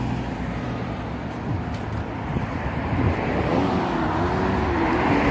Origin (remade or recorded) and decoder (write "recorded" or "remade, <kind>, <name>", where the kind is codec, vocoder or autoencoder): remade, vocoder, BigVGAN v2